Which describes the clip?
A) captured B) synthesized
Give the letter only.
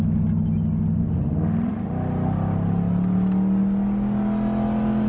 A